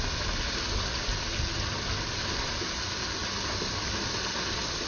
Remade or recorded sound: recorded